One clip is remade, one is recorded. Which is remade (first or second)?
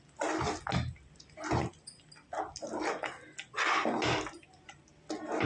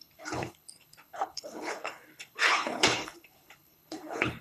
second